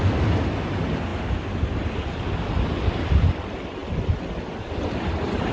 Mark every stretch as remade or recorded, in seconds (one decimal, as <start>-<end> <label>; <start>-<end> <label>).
0.0-5.5 recorded